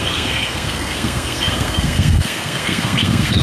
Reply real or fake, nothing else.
fake